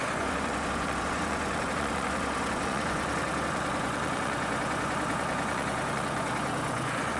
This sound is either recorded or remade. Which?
remade